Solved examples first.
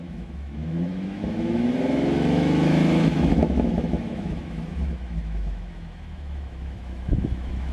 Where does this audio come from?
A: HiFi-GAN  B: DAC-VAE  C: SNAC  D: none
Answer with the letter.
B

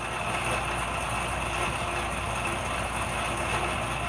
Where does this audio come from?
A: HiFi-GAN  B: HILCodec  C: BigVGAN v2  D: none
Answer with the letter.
D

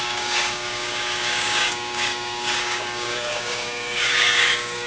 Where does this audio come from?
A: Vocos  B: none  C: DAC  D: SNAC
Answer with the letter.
C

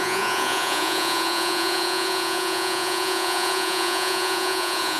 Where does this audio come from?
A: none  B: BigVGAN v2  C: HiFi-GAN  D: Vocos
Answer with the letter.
D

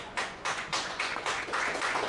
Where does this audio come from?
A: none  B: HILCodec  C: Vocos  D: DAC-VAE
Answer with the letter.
C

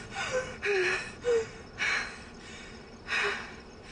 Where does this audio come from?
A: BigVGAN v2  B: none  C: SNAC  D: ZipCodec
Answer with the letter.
B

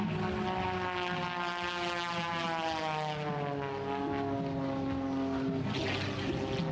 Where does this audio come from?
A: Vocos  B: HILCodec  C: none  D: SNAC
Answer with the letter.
C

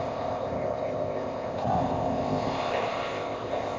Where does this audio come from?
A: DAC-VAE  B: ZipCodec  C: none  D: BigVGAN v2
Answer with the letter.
B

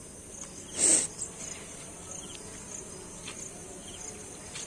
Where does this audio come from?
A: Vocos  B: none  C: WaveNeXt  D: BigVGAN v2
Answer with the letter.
B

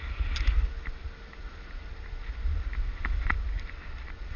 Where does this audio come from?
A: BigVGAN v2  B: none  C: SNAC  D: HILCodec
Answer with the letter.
B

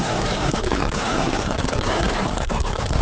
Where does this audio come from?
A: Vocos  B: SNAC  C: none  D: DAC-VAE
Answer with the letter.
B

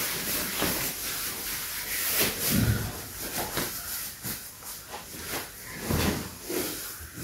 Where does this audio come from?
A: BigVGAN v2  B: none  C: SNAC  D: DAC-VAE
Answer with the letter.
B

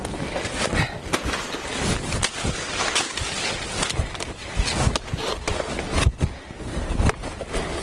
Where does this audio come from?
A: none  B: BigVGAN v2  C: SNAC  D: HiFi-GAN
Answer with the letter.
A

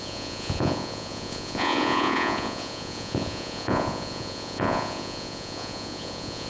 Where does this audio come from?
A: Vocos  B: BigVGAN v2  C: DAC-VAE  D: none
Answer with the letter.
A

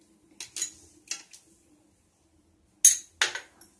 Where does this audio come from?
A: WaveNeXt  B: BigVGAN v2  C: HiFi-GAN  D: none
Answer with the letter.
D